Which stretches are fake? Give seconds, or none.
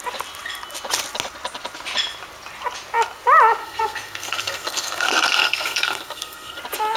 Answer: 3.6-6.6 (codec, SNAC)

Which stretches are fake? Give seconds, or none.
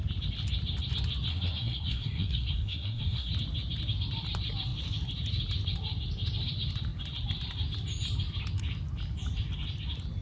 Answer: 1.3-3.3 (codec, SNAC)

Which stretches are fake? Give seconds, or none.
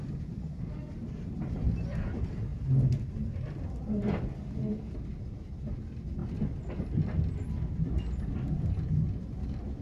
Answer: none